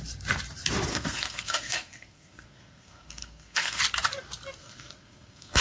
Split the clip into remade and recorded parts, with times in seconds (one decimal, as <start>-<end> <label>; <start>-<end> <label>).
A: 0.0-0.9 recorded; 0.9-3.8 remade; 3.8-4.6 recorded; 4.6-5.6 remade

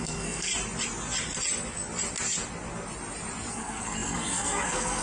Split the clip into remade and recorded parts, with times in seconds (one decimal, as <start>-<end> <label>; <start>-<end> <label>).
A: 0.0-0.5 remade; 0.5-3.5 recorded; 3.5-5.0 remade

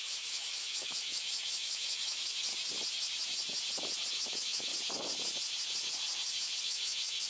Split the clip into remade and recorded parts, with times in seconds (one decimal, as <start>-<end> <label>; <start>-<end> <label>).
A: 0.0-2.5 remade; 2.5-4.1 recorded; 4.1-4.7 remade; 4.7-6.6 recorded; 6.6-7.3 remade